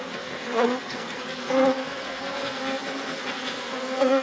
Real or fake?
fake